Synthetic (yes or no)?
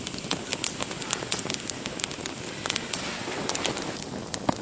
no